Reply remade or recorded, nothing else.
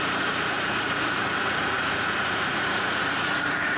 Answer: remade